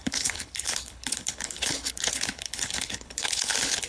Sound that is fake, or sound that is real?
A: fake